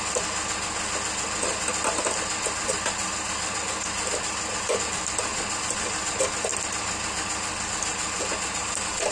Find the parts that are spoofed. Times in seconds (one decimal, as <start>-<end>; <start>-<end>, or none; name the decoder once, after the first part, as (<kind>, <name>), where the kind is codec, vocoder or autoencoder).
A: 5.3-6.5 (vocoder, BigVGAN v2)